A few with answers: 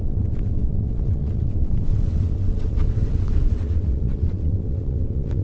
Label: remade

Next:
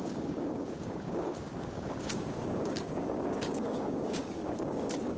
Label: remade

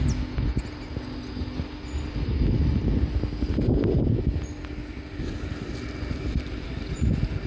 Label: recorded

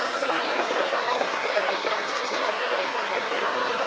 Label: remade